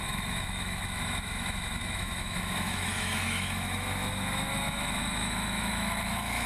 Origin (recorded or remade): remade